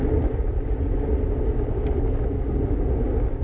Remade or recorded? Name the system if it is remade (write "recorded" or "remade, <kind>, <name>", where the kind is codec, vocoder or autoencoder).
recorded